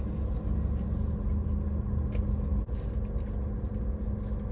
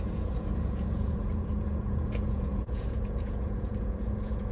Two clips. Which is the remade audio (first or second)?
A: second